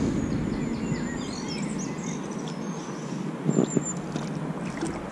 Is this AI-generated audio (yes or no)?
no